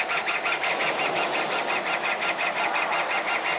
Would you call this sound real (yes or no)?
yes